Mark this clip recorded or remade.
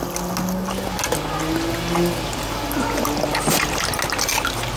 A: recorded